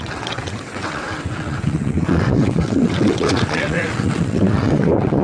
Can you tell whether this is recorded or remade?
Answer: remade